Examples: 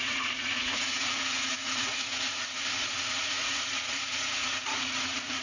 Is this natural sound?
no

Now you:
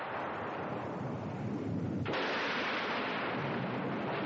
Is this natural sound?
yes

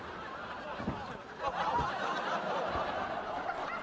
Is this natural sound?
yes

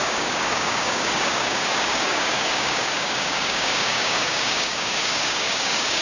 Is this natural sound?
no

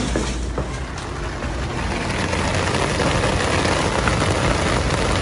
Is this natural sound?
yes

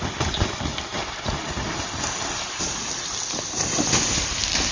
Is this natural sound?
yes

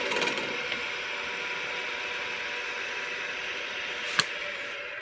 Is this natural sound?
yes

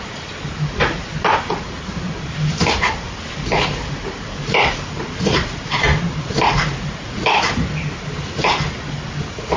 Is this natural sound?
yes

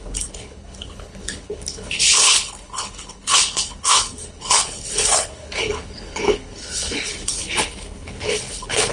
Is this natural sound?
no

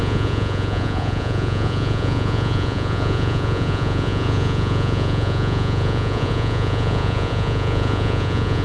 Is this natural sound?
no